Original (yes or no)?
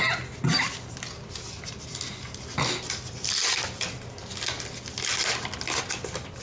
yes